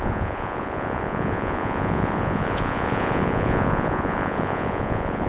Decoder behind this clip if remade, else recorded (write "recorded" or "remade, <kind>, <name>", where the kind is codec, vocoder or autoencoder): remade, vocoder, Vocos